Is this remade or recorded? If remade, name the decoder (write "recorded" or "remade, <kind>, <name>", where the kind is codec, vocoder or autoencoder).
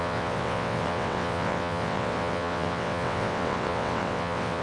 remade, vocoder, WaveNeXt